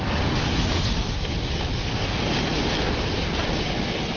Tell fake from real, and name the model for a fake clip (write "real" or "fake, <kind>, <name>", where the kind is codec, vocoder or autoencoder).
real